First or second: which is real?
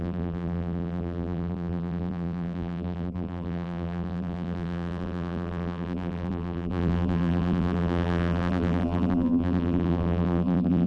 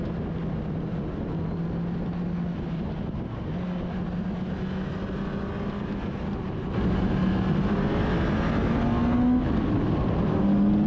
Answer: second